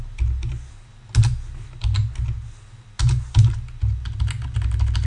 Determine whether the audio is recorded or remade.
recorded